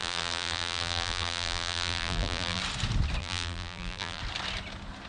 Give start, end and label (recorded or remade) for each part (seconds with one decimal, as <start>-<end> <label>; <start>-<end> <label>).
0.0-2.6 remade; 2.6-3.2 recorded; 3.2-4.2 remade; 4.2-5.1 recorded

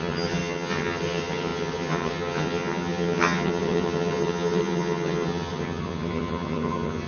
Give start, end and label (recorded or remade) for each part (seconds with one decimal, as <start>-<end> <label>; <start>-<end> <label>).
0.0-7.1 remade

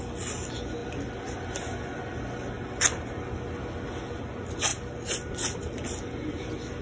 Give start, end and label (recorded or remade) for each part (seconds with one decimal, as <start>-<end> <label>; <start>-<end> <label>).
0.0-6.8 recorded

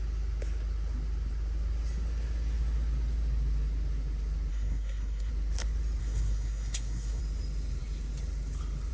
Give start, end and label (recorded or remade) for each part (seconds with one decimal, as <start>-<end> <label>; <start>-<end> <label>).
0.0-4.5 recorded; 4.5-5.3 remade; 5.3-6.0 recorded; 6.0-7.2 remade; 7.2-8.9 recorded

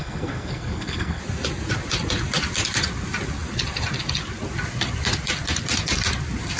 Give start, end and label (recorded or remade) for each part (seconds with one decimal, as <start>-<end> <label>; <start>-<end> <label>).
0.0-1.2 remade; 1.2-6.6 recorded

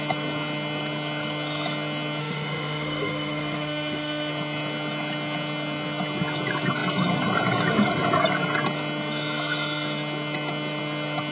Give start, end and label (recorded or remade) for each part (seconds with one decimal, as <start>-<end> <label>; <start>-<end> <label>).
0.0-2.2 recorded; 2.2-4.3 remade; 4.3-11.3 recorded